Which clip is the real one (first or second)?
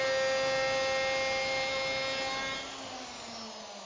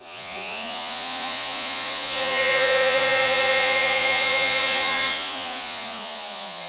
first